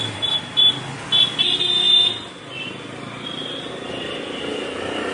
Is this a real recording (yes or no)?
yes